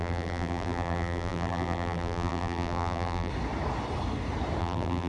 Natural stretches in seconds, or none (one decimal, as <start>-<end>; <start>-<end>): 3.3-4.6